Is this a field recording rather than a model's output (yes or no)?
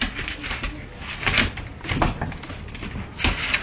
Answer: yes